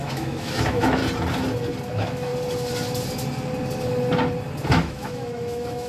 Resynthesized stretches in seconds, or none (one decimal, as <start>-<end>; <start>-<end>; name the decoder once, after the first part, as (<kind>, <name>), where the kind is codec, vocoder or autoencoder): 0.0-1.0 (autoencoder, DAC-VAE); 1.9-2.3; 4.7-5.9